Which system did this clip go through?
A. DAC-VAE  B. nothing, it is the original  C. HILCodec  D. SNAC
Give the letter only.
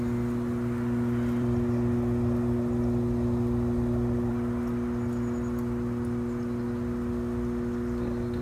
B